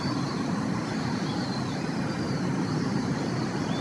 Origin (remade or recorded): recorded